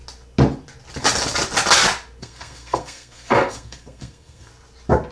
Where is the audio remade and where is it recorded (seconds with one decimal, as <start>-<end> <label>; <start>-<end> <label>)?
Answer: 0.0-2.2 recorded; 2.2-4.5 remade; 4.5-5.1 recorded

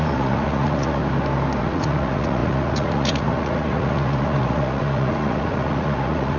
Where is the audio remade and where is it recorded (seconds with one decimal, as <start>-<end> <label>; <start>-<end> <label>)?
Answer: 0.0-1.0 remade; 1.0-1.6 recorded; 1.6-6.4 remade

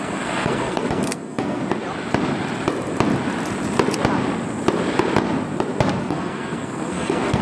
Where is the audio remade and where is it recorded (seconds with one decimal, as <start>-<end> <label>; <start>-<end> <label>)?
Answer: 0.0-1.6 remade; 1.6-6.0 recorded; 6.0-7.4 remade

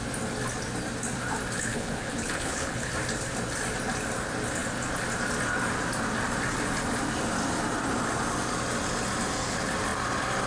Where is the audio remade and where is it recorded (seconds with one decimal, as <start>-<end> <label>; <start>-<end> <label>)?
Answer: 0.0-1.7 recorded; 1.7-2.9 remade; 2.9-10.5 recorded